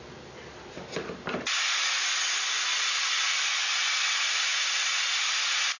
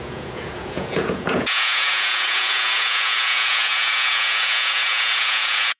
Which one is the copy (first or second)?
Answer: second